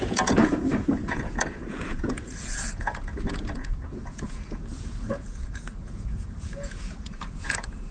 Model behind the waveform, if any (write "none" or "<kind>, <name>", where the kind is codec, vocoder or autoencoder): vocoder, Vocos